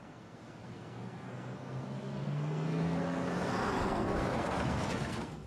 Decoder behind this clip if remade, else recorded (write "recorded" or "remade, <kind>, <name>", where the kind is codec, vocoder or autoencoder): remade, codec, SNAC